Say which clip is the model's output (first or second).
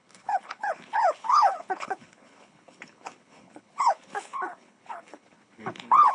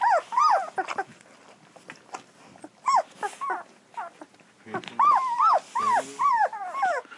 first